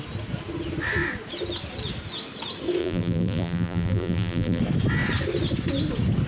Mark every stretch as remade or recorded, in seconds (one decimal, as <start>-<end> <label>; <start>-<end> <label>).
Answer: 0.0-2.8 recorded; 2.8-4.6 remade; 4.6-6.3 recorded